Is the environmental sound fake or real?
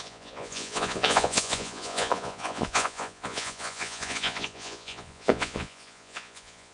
fake